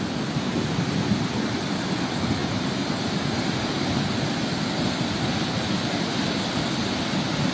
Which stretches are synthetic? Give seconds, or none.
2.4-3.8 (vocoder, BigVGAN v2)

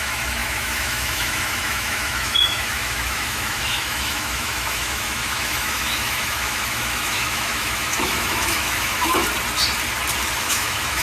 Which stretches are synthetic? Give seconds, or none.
0.0-9.2 (autoencoder, DAC-VAE); 10.4-11.0

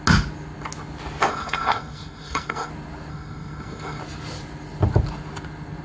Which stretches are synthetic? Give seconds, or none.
1.3-2.7 (codec, SNAC); 3.1-4.0

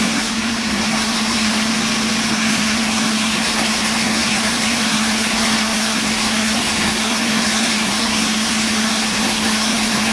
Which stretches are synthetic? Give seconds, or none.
0.0-1.7 (codec, SNAC); 2.3-10.1

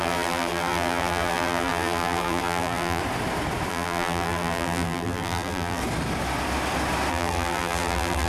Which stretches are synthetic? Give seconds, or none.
0.0-3.0 (vocoder, BigVGAN v2); 3.7-5.8; 7.1-8.3

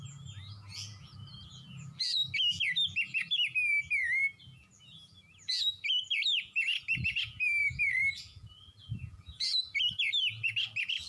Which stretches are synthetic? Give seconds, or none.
0.0-11.1 (vocoder, BigVGAN v2)

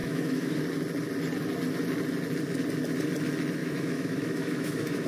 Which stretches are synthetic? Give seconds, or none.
0.0-0.6 (autoencoder, DAC-VAE); 3.6-5.1

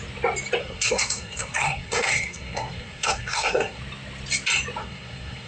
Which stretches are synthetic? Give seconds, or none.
0.6-3.8 (codec, SNAC); 4.8-5.5